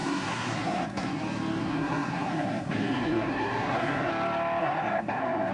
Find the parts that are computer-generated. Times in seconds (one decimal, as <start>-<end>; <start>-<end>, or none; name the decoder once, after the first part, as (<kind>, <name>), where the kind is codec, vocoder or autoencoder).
0.0-1.2 (codec, SNAC); 1.6-4.1; 4.6-5.5

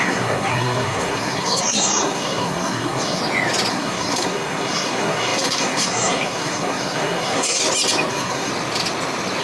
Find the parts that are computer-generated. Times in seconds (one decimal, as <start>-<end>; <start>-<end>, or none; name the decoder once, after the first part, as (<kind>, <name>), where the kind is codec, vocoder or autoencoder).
0.0-3.2 (codec, SNAC); 3.7-7.6; 8.1-8.5

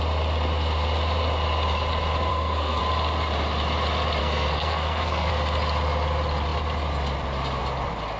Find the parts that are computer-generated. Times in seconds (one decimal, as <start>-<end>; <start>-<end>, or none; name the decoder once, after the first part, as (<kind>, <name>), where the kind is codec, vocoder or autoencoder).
2.3-2.8 (codec, SNAC); 4.2-5.3

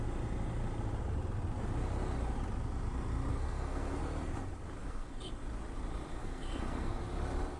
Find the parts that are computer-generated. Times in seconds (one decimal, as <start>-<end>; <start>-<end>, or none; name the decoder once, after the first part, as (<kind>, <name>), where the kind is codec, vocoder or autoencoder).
3.3-4.0 (codec, SNAC); 4.8-5.3; 6.2-7.0

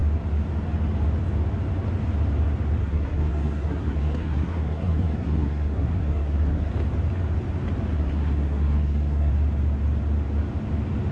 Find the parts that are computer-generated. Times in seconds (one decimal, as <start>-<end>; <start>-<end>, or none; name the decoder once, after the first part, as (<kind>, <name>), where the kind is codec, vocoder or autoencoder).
2.8-6.7 (codec, SNAC); 7.9-9.3

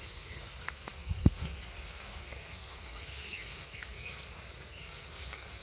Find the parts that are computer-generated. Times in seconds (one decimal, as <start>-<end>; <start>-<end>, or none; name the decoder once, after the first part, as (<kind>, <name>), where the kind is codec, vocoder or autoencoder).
0.0-5.6 (codec, SNAC)

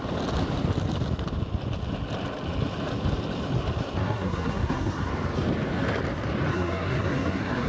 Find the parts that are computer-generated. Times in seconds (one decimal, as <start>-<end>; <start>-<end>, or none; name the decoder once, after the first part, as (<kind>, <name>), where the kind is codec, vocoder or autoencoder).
4.0-5.1 (codec, SNAC); 6.5-7.7

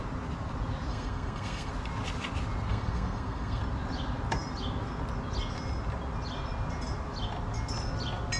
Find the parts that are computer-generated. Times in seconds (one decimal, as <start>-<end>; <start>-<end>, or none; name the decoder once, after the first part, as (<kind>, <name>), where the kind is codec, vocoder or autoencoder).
0.9-1.7 (codec, SNAC); 2.7-3.6